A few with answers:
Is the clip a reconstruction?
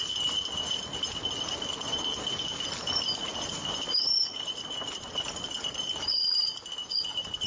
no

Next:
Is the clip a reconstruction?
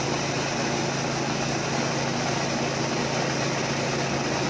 no